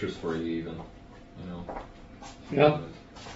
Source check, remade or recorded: recorded